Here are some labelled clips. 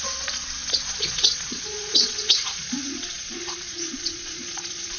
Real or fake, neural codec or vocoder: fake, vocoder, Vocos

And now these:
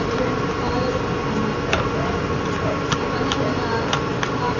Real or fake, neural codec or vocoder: real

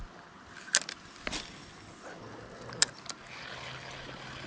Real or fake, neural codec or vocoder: real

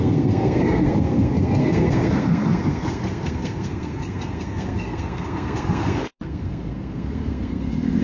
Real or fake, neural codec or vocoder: fake, codec, SNAC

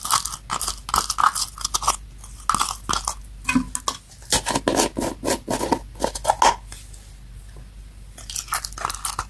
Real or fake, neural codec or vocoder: real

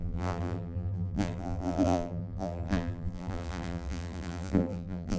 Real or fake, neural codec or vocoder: fake, vocoder, BigVGAN v2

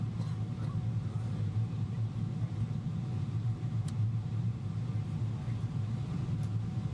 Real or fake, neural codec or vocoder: fake, vocoder, BigVGAN v2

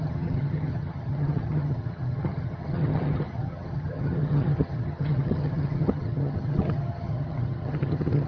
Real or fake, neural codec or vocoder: fake, vocoder, HiFi-GAN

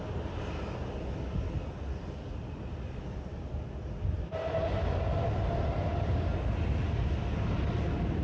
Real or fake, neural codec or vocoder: real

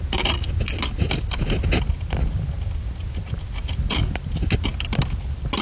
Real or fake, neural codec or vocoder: real